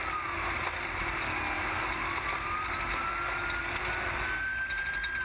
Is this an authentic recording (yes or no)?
yes